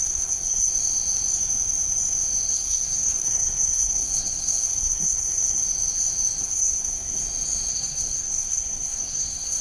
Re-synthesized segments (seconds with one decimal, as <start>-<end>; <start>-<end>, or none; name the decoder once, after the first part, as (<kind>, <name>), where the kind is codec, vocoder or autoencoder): 0.0-0.7 (codec, SNAC); 2.5-5.6; 6.4-7.2; 7.7-9.6